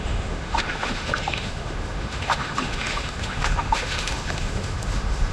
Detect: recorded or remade remade